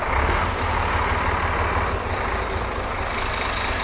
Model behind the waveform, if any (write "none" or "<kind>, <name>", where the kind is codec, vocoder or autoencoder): none